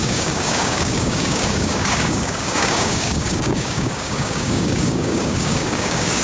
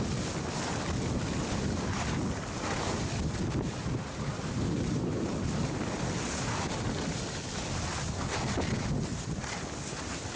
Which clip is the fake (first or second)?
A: first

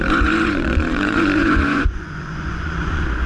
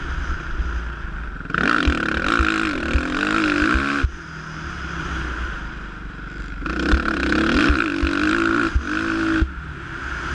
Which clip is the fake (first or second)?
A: first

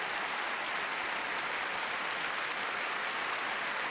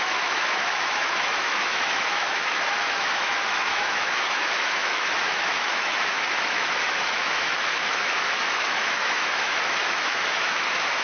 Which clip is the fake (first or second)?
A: second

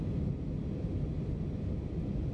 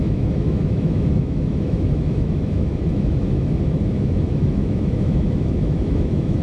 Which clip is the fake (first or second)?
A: second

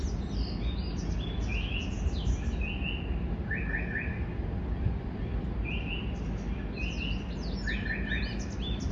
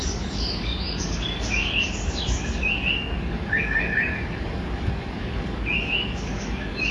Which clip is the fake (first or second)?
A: second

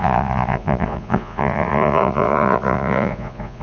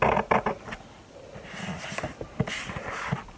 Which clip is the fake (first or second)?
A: first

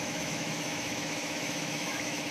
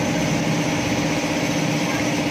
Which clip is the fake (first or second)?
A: first